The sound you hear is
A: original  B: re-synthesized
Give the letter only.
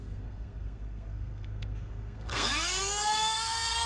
B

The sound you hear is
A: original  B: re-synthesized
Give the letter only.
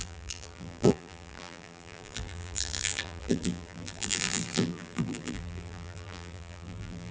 B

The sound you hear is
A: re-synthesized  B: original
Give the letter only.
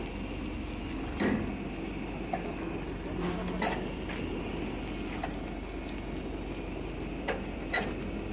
B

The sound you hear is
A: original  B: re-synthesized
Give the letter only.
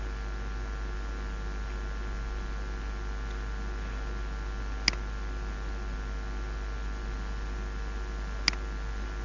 A